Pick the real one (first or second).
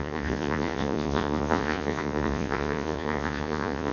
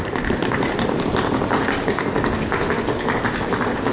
second